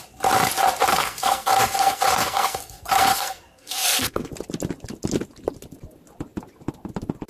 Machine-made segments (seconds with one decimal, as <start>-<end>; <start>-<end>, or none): 0.9-4.3